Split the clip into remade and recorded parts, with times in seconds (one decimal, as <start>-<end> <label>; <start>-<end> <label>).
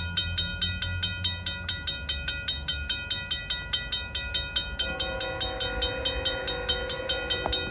0.0-7.7 recorded